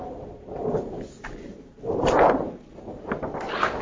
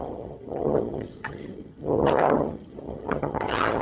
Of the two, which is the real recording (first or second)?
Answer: first